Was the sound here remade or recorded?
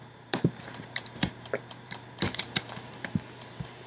remade